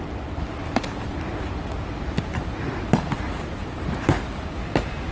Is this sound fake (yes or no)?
no